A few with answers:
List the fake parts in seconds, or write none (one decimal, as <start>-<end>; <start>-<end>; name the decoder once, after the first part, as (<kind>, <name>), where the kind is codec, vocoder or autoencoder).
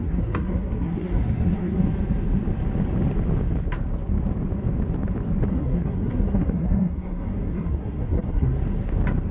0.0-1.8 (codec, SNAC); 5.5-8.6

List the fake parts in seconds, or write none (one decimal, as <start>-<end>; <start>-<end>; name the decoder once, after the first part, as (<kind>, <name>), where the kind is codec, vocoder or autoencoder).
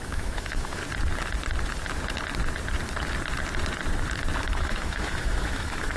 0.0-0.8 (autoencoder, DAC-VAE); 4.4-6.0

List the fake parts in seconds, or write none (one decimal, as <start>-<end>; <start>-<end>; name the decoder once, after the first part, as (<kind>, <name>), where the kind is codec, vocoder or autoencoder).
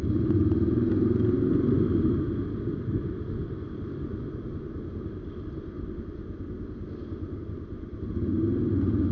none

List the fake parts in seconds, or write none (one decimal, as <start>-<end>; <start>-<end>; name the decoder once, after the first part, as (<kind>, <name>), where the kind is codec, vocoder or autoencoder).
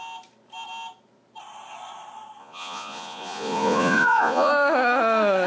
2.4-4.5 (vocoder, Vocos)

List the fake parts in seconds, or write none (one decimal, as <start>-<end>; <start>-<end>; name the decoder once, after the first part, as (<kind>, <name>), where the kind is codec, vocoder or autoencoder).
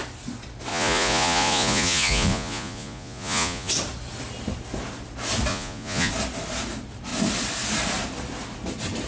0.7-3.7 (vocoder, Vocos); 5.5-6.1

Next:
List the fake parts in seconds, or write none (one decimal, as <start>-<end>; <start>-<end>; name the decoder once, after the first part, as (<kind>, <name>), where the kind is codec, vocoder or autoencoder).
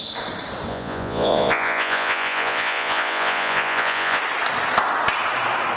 0.7-4.2 (vocoder, Vocos)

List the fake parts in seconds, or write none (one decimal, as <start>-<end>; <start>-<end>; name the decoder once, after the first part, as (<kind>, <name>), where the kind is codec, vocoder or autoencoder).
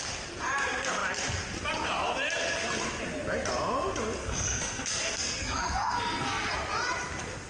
4.2-6.5 (codec, SNAC)